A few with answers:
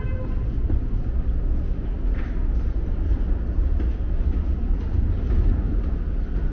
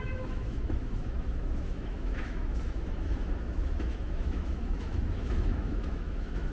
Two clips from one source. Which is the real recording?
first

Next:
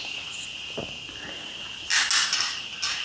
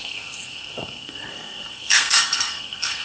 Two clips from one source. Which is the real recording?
first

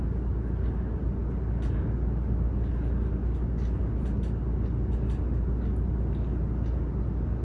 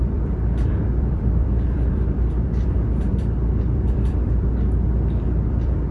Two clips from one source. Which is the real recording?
first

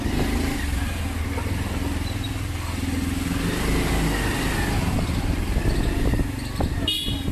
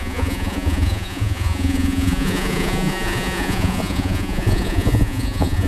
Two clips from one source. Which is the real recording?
first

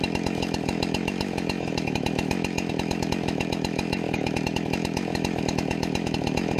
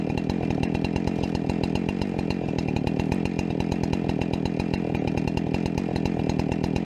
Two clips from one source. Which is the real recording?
second